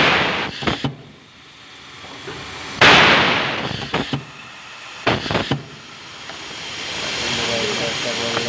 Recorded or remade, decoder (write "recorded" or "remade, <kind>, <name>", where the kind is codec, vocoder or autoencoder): recorded